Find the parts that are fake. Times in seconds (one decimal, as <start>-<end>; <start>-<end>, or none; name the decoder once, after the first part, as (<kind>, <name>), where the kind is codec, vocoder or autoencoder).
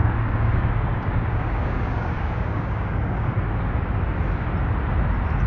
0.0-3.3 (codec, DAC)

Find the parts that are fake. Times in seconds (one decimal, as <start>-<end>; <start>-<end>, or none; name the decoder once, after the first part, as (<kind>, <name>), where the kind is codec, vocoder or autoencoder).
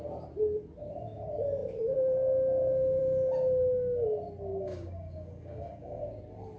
4.5-6.0 (codec, DAC)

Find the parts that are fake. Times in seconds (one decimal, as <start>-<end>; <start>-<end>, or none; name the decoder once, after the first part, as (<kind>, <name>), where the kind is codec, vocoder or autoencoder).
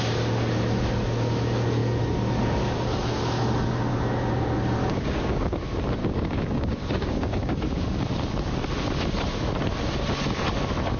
4.8-5.6 (codec, DAC); 6.0-8.1